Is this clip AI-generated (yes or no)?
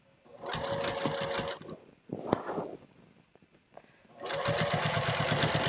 no